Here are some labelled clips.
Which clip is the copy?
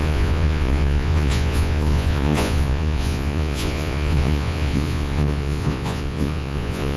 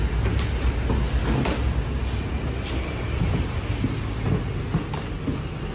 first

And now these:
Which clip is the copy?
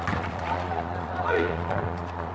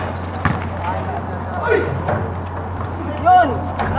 first